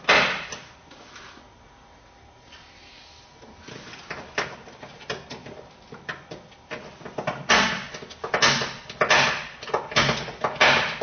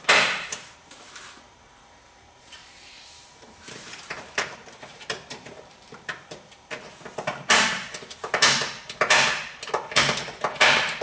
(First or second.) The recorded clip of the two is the first